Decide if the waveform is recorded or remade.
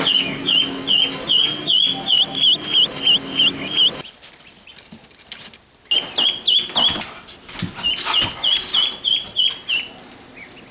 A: recorded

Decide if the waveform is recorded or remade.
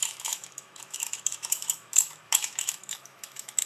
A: remade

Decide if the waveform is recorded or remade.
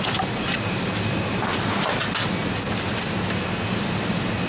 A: recorded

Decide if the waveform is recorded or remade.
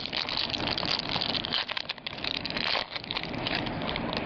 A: recorded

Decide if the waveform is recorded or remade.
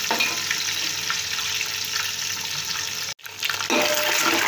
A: recorded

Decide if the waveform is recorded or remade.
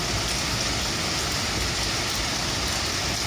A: recorded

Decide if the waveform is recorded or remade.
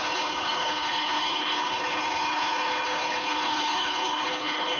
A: remade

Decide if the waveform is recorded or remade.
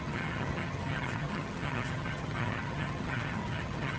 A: remade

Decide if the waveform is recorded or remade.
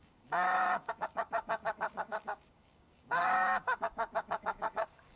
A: remade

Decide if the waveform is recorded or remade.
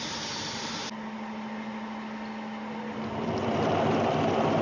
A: recorded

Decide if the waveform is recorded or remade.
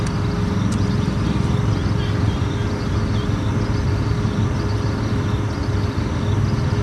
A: recorded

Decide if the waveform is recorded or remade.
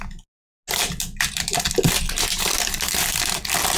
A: recorded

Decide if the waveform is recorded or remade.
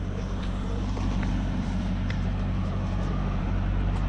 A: remade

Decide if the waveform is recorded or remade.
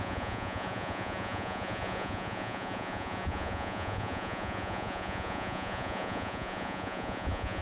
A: remade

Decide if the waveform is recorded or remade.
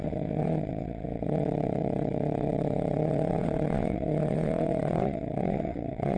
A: remade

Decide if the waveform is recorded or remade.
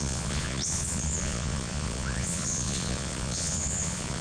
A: remade